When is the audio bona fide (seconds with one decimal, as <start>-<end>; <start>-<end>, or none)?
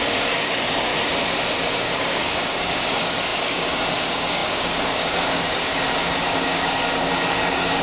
0.9-1.6